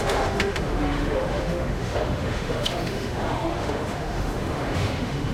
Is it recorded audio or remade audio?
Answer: remade